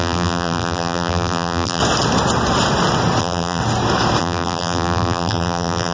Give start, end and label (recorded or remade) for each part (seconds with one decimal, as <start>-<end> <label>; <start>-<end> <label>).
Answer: 0.0-1.8 remade; 1.8-3.2 recorded; 3.2-3.6 remade; 3.6-4.2 recorded; 4.2-5.9 remade